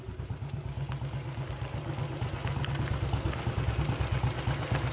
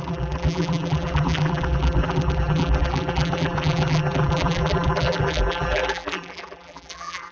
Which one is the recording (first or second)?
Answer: first